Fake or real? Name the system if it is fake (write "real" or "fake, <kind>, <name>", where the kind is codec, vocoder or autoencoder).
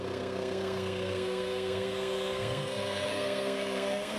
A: fake, codec, SNAC